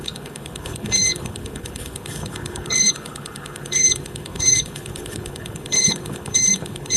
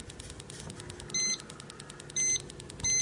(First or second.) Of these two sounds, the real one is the second